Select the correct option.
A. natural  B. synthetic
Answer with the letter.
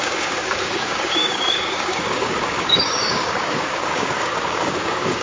B